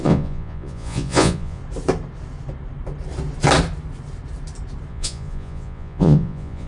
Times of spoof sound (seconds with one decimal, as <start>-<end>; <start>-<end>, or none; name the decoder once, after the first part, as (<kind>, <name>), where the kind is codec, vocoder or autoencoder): 0.0-1.6 (vocoder, Vocos); 4.9-6.7